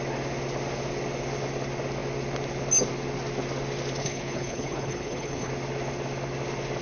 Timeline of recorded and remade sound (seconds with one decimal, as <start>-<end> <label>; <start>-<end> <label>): 0.0-4.0 recorded; 4.0-5.5 remade; 5.5-6.8 recorded